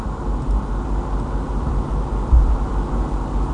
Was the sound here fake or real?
real